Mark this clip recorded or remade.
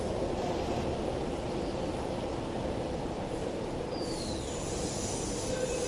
recorded